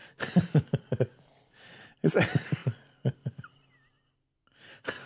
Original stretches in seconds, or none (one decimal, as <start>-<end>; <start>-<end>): 2.1-2.6; 3.9-5.1

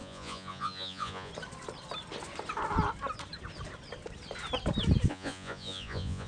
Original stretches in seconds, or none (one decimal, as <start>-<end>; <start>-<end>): 1.3-5.1